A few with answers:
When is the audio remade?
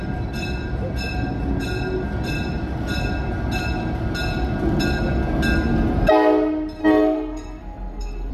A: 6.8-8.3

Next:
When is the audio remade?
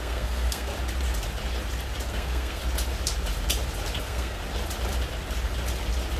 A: 0.0-0.7; 2.1-2.6; 4.0-4.4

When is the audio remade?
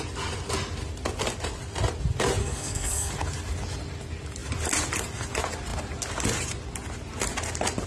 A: 2.4-3.1